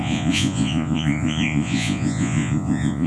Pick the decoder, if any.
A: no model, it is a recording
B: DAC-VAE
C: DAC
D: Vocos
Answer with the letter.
D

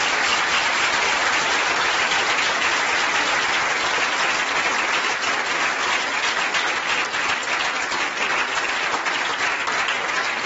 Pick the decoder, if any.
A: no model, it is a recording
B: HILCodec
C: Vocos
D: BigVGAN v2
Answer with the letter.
A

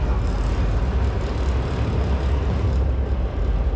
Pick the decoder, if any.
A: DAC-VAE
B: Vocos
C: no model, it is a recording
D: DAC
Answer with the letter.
C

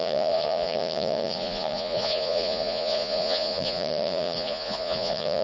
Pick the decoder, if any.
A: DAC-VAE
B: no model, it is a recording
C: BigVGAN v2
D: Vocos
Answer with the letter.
D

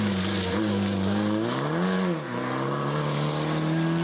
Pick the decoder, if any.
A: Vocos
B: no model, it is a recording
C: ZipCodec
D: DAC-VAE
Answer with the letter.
B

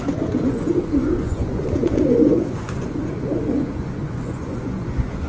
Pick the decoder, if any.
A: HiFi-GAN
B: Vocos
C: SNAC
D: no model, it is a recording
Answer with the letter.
B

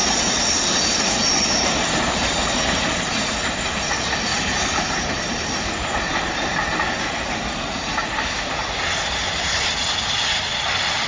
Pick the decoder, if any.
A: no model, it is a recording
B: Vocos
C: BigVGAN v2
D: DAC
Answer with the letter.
A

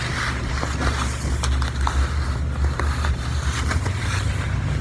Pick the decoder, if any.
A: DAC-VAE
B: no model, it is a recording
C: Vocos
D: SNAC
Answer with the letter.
B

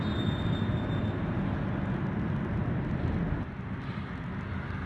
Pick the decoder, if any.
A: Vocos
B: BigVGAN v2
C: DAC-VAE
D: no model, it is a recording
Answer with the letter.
D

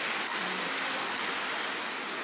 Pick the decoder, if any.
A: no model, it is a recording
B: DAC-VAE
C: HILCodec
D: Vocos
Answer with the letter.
A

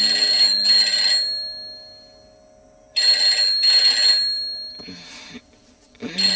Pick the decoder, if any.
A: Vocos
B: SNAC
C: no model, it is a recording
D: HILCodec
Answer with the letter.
C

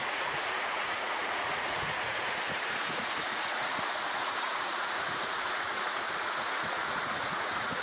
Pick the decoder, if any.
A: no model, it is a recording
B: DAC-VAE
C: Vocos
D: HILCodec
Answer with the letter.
C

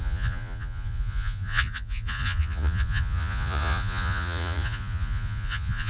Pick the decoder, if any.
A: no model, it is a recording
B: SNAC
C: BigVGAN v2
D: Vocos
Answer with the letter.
D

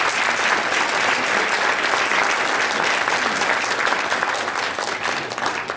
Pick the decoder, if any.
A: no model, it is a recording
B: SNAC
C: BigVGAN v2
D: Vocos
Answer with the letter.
A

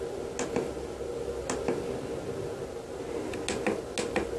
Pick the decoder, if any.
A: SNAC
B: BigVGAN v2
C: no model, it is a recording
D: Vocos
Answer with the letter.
C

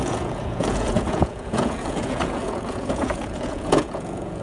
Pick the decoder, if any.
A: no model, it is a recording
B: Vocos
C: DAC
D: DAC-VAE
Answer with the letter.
B